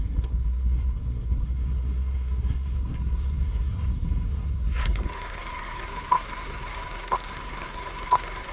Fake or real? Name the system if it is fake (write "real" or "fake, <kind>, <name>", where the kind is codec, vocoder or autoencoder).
fake, codec, SNAC